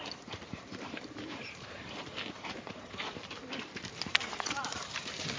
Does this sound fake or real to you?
fake